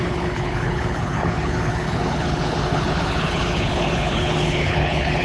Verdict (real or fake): fake